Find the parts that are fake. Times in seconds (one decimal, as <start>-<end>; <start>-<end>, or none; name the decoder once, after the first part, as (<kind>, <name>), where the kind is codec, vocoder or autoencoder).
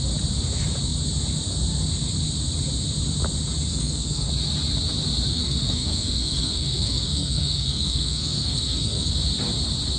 3.7-4.3 (codec, SNAC); 5.3-9.1